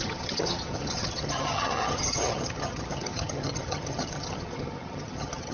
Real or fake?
fake